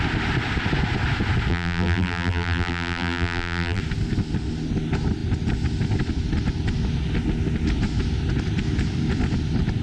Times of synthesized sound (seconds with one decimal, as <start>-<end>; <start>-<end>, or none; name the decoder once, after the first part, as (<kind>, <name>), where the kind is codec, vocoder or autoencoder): 1.5-3.8 (vocoder, BigVGAN v2)